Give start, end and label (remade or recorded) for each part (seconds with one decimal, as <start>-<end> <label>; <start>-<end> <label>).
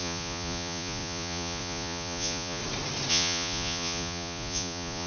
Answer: 0.0-2.6 remade; 2.6-3.1 recorded; 3.1-5.1 remade